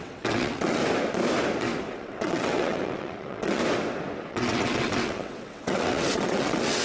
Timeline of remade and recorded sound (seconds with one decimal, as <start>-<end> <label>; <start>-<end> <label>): 0.0-0.8 remade; 0.8-1.9 recorded; 1.9-3.6 remade; 3.6-4.3 recorded; 4.3-6.8 remade